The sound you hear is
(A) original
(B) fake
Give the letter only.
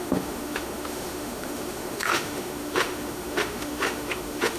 B